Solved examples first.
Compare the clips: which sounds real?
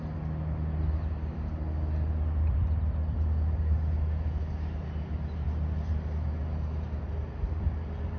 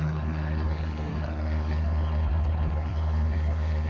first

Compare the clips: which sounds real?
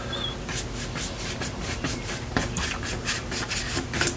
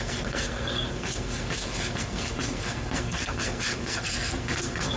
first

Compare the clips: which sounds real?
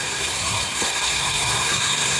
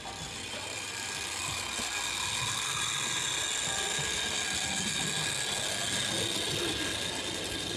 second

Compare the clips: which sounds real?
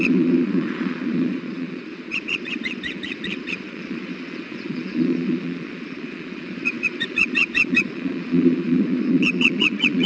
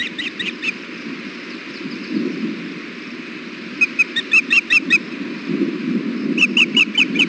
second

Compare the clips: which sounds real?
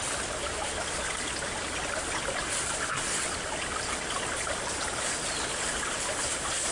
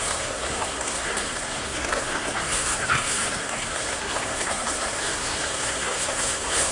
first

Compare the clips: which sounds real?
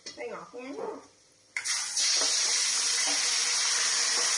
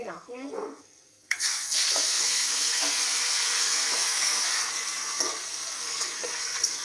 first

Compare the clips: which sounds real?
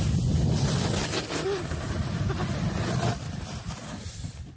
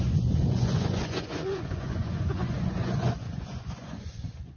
first